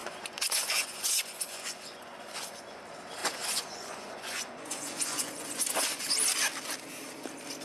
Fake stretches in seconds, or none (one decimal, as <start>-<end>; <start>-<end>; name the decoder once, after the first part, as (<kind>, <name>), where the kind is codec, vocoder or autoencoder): 0.0-2.8 (vocoder, Vocos); 3.2-6.1

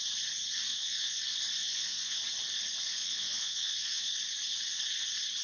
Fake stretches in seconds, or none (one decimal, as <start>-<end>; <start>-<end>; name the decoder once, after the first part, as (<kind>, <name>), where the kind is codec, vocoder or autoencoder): 0.7-1.2 (vocoder, Vocos); 1.6-2.2; 3.0-4.1

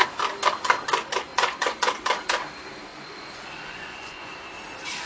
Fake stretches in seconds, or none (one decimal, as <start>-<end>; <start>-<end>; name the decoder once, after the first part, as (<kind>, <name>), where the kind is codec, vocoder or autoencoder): 1.3-1.8 (vocoder, Vocos); 2.9-4.3

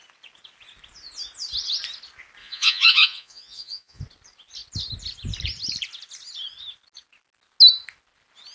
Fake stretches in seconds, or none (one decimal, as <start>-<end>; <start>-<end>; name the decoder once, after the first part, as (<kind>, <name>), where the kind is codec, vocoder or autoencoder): 2.4-4.0 (vocoder, Vocos)

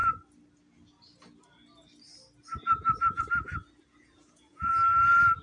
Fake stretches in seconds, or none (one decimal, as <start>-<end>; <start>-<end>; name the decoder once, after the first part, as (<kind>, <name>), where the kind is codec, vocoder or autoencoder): 3.9-4.7 (vocoder, Vocos)